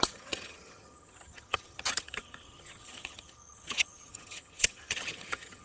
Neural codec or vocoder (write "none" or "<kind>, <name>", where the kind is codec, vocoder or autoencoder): vocoder, HiFi-GAN